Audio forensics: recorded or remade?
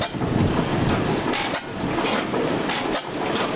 recorded